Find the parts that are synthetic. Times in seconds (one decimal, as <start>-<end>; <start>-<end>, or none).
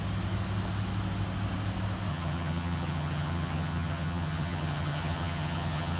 2.1-6.0